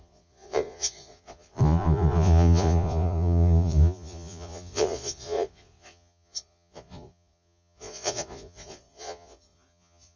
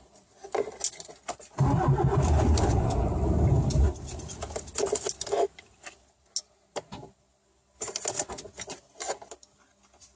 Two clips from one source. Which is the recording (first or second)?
second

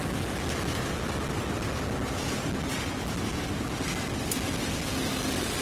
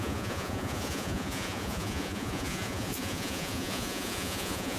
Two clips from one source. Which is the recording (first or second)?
first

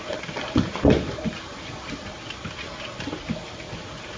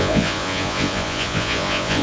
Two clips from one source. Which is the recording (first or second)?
first